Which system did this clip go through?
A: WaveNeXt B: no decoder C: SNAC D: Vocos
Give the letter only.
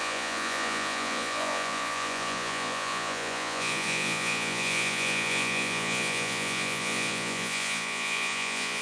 D